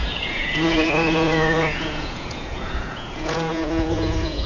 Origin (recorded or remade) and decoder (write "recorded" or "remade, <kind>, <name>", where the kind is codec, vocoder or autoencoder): remade, vocoder, Vocos